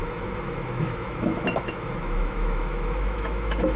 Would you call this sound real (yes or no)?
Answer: no